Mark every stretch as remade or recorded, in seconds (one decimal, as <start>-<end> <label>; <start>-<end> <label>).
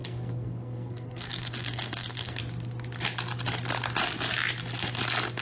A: 0.0-2.4 remade; 2.4-5.4 recorded